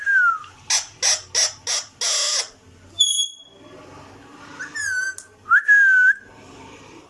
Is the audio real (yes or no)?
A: yes